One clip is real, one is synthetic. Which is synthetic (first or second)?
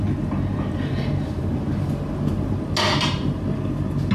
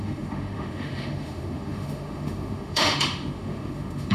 second